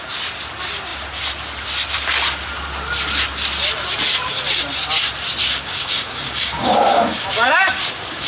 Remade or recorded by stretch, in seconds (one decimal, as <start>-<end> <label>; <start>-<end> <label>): 0.0-5.4 recorded; 5.4-8.3 remade